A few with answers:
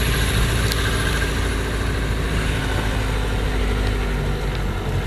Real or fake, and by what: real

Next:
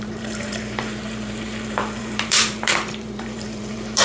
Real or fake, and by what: fake, vocoder, BigVGAN v2